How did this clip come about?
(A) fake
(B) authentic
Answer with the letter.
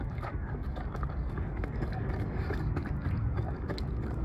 A